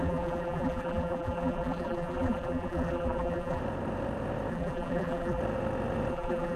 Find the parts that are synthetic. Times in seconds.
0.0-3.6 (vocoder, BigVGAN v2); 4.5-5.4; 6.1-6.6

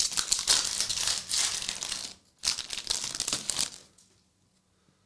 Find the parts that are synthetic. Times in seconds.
none

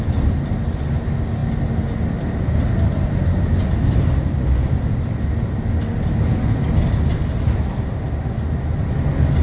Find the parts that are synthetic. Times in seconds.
none

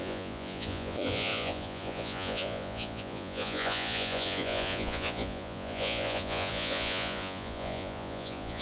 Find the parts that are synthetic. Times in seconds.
0.0-8.6 (vocoder, Vocos)

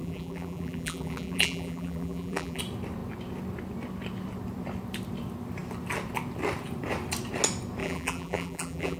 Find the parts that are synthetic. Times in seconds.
0.0-2.6 (vocoder, BigVGAN v2); 7.8-9.0

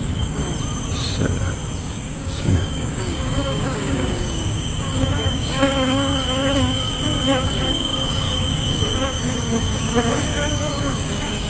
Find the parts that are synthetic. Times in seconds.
0.0-0.4 (codec, DAC); 1.8-11.5

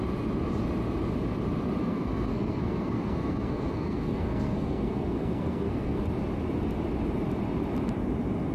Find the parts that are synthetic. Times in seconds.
1.8-6.0 (codec, SNAC)

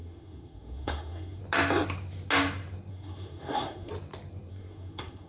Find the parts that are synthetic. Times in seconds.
0.0-1.4 (codec, SNAC); 2.9-3.9; 4.5-5.3